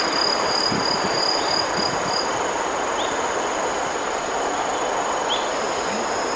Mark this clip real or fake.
real